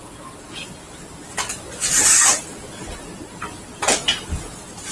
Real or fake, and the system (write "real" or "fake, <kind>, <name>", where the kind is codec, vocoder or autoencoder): real